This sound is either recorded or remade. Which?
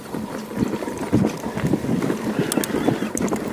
recorded